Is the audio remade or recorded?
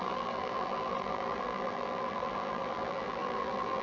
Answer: remade